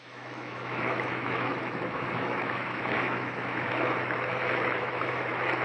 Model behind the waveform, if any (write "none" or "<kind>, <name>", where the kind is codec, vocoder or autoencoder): autoencoder, DAC-VAE